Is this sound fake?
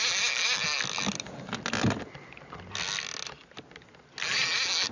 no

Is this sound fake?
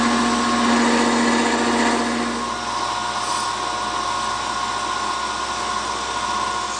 no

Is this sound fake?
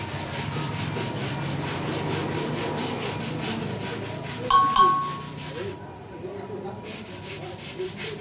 no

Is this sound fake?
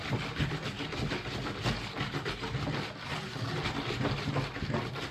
no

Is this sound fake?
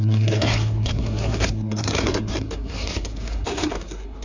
yes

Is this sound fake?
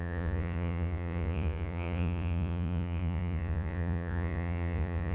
yes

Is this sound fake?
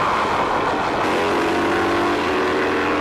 no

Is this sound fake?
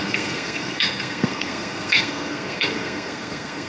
yes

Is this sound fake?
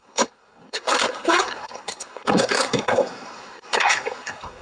yes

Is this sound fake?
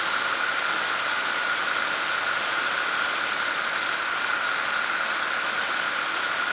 no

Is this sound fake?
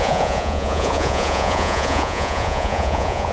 yes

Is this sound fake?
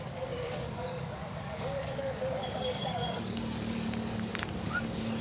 yes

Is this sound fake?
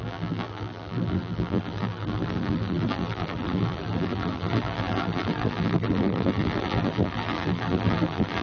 yes